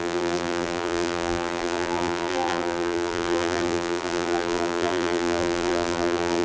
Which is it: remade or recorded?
remade